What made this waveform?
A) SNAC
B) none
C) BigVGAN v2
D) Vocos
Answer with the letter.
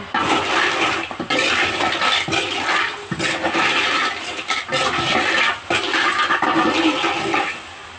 B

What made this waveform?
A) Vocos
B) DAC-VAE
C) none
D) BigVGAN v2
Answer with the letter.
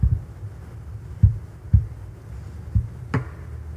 C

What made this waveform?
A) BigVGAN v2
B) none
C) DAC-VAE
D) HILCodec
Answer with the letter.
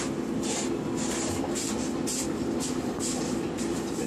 B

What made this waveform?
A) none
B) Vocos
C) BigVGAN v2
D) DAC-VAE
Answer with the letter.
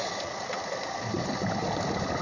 A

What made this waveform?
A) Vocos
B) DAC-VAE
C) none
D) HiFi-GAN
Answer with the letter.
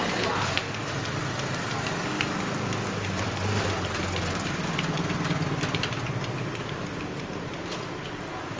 C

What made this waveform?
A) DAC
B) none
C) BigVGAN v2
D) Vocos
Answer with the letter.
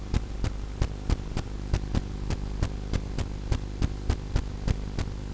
B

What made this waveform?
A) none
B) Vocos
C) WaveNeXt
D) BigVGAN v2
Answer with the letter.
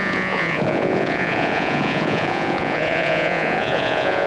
B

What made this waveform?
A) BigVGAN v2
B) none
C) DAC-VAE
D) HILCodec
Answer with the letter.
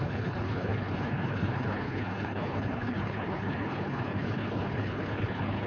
D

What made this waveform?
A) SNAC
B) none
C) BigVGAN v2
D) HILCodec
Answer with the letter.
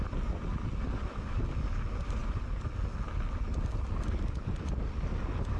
B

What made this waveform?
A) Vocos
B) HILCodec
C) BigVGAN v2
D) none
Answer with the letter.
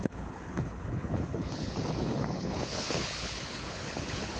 B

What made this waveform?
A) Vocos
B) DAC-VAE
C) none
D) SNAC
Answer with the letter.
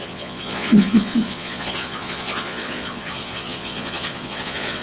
A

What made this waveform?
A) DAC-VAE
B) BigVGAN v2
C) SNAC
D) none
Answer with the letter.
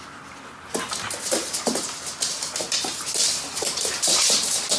D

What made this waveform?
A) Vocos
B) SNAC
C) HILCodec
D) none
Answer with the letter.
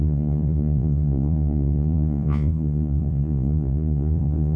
A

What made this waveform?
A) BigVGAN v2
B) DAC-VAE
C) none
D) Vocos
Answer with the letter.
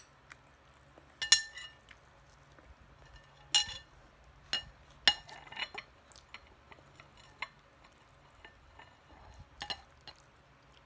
C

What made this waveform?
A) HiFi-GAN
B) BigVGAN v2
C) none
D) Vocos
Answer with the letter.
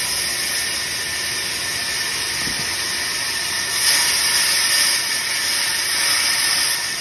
C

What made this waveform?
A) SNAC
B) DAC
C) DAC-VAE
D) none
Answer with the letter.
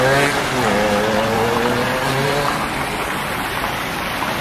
D